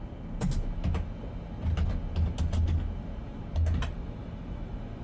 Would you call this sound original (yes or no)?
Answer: yes